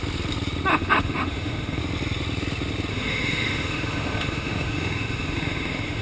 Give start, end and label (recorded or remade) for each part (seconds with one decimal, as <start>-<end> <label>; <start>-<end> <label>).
0.0-0.7 recorded; 0.7-1.8 remade; 1.8-2.9 recorded; 2.9-6.0 remade